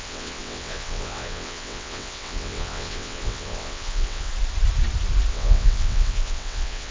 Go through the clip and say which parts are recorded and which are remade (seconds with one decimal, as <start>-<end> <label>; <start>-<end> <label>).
0.0-4.3 remade; 4.3-5.3 recorded; 5.3-6.9 remade